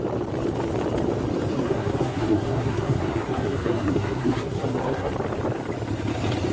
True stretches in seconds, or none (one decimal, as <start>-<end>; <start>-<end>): 0.0-1.5; 5.1-6.5

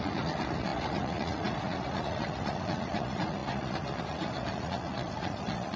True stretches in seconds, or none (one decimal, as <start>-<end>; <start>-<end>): none

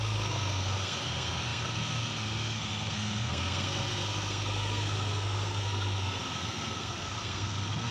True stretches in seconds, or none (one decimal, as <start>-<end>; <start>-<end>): none